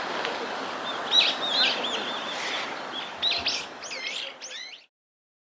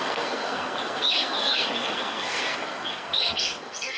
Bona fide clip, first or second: first